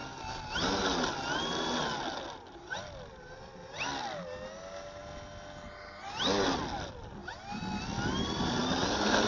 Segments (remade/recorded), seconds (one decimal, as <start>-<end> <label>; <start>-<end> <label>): 0.0-9.3 recorded